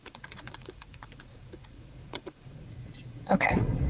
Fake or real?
fake